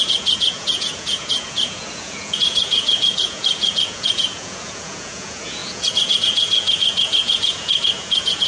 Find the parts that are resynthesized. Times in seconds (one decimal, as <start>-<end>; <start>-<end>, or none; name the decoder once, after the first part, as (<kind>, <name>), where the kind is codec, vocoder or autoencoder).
0.0-8.5 (vocoder, Vocos)

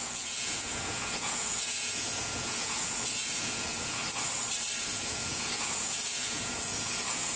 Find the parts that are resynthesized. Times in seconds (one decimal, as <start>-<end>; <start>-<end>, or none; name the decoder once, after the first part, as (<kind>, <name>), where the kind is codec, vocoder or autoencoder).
0.0-4.0 (vocoder, Vocos); 4.8-7.4

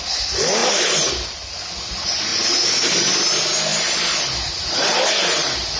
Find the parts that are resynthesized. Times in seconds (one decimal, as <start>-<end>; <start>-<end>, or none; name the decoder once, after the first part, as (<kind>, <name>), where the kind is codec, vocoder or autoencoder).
none

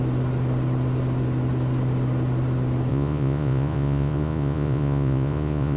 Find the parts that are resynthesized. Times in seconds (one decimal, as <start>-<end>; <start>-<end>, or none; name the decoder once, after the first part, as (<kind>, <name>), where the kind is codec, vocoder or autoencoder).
2.9-5.8 (vocoder, Vocos)

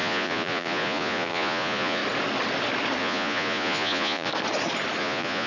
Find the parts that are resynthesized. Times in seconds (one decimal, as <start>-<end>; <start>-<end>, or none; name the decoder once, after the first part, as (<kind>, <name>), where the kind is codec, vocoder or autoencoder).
0.0-2.0 (vocoder, Vocos); 3.0-4.3; 5.0-5.5

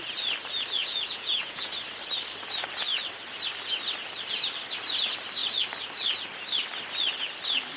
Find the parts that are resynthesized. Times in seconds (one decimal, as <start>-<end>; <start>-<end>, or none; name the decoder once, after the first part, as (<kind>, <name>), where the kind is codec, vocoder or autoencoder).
0.8-1.7 (vocoder, Vocos)

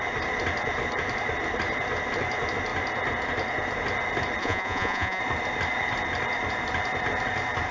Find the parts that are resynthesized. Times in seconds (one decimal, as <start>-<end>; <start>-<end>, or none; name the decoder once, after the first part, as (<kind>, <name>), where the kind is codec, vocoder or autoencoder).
4.4-5.2 (vocoder, Vocos)

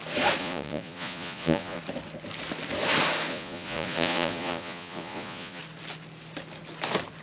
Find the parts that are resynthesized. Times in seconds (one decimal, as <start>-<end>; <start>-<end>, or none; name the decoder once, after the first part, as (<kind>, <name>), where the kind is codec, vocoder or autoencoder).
0.4-1.8 (vocoder, Vocos); 3.3-5.6